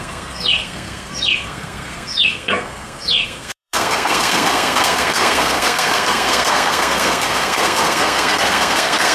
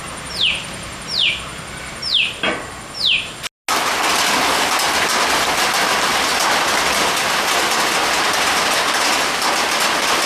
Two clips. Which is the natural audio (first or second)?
second